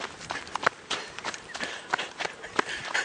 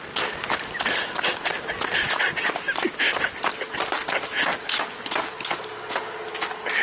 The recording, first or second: second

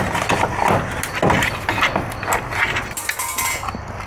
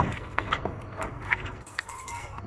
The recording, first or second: first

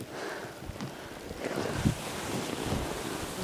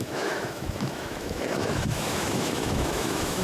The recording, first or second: first